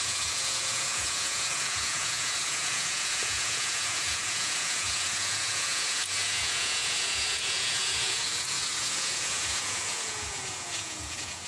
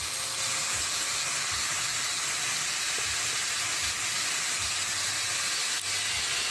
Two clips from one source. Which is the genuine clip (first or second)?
second